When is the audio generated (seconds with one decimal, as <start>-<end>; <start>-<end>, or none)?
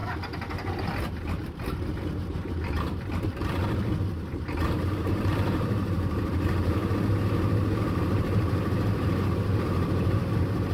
1.1-3.4; 4.0-6.8; 7.7-10.7